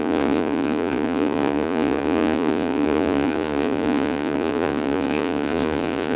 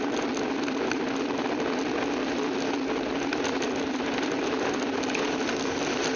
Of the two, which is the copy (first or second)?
first